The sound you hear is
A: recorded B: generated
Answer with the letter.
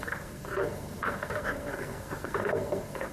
B